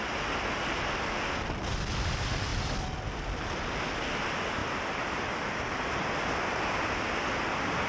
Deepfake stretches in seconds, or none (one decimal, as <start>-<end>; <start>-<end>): none